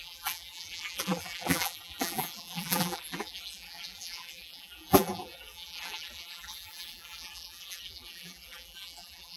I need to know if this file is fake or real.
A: fake